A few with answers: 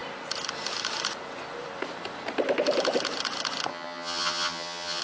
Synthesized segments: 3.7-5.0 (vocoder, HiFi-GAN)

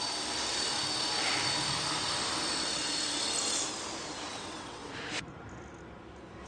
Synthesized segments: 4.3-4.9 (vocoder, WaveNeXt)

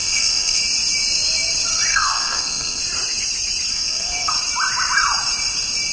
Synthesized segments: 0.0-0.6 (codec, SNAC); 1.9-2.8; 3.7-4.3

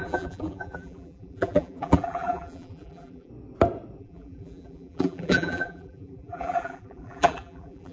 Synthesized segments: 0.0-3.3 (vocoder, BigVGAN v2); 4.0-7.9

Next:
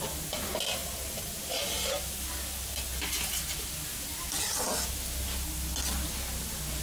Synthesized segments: none